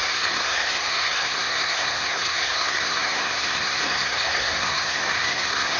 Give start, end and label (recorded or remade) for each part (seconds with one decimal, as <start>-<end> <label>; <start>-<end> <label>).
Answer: 0.0-5.8 remade